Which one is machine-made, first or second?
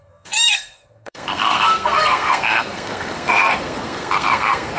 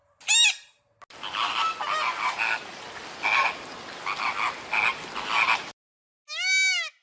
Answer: first